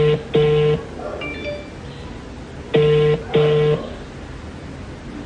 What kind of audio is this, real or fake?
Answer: real